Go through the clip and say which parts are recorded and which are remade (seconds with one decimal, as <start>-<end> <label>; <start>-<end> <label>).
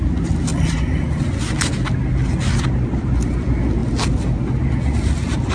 0.0-5.5 recorded